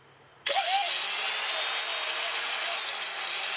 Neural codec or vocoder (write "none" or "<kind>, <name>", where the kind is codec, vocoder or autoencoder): none